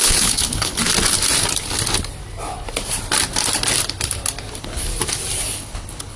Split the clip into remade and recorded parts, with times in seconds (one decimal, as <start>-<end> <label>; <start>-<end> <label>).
0.0-0.8 remade; 0.8-4.5 recorded; 4.5-4.9 remade; 4.9-5.4 recorded; 5.4-6.2 remade